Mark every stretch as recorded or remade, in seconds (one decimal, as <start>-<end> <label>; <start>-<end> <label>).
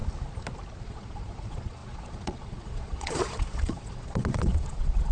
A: 0.0-0.8 recorded; 0.8-5.1 remade